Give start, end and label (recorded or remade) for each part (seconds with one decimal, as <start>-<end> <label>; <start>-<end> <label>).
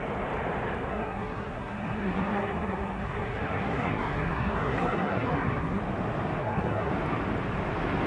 0.0-0.9 recorded; 0.9-5.8 remade; 5.8-6.4 recorded; 6.4-6.9 remade; 6.9-8.1 recorded